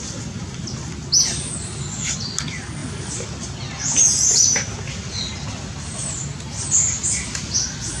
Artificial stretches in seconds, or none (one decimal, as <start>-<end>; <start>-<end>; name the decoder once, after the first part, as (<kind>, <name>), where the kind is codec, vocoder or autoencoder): none